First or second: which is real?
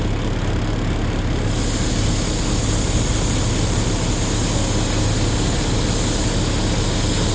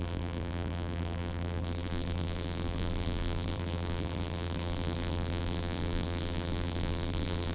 first